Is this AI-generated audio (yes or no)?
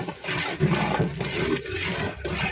no